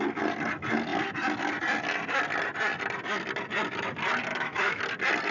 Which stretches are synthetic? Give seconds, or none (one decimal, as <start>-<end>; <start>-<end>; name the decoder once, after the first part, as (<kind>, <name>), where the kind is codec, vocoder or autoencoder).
4.3-4.8 (autoencoder, DAC-VAE)

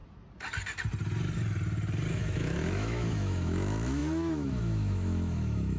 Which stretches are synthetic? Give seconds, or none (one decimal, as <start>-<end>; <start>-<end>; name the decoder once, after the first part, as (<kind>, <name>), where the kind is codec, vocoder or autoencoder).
2.1-5.8 (autoencoder, DAC-VAE)

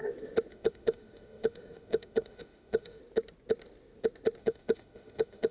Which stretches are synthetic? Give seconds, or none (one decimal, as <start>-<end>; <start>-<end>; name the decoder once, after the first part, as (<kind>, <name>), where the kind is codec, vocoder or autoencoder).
0.5-3.0 (autoencoder, DAC-VAE); 4.4-5.5

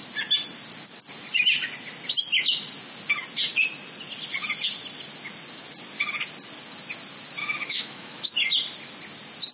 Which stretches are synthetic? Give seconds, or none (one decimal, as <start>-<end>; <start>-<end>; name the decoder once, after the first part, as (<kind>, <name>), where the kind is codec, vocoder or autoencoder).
7.4-8.3 (autoencoder, DAC-VAE)

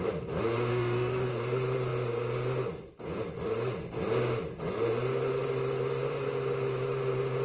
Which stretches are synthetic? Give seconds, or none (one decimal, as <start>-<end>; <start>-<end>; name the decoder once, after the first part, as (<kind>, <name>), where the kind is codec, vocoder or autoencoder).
0.7-1.3 (autoencoder, DAC-VAE)

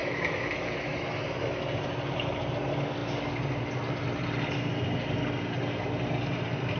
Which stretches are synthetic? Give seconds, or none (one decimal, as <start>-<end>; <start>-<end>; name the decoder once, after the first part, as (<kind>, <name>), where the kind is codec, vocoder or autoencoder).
0.0-1.6 (autoencoder, DAC-VAE)

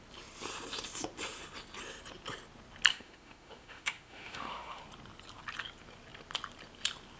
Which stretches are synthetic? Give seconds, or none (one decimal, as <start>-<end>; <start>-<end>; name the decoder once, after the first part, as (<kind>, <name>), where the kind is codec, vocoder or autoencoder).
2.9-4.8 (autoencoder, DAC-VAE)